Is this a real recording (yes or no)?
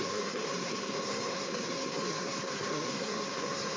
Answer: no